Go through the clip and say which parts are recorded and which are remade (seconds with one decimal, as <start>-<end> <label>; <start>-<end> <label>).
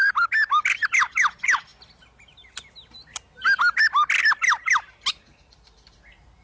0.0-6.4 recorded